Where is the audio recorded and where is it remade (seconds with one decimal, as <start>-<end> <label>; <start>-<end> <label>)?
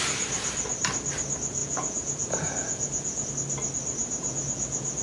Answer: 0.0-1.6 recorded; 1.6-3.3 remade; 3.3-4.0 recorded; 4.0-5.0 remade